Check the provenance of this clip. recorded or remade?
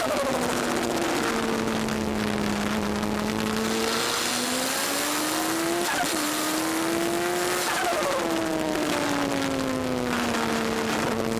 recorded